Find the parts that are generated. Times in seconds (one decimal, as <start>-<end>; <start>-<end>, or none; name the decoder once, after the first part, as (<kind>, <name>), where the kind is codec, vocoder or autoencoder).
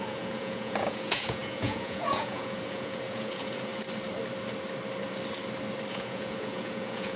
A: 0.0-3.7 (vocoder, Vocos); 5.9-7.2